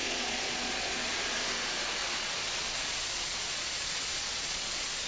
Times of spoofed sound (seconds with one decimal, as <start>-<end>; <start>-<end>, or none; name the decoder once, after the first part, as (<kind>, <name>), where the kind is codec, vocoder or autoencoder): 0.0-1.4 (vocoder, Vocos); 2.0-5.1

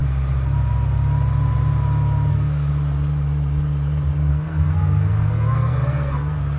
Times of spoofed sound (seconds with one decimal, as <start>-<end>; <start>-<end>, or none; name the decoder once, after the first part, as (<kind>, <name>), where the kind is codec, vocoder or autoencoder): 2.3-2.7 (codec, SNAC); 4.3-6.6